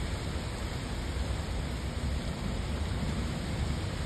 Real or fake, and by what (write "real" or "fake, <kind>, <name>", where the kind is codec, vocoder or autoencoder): real